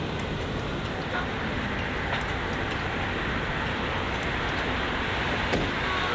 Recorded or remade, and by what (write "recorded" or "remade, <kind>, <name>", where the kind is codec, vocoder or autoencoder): recorded